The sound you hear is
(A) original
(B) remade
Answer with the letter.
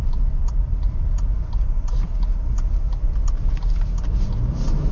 A